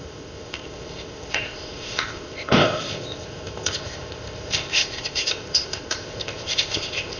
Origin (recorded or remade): remade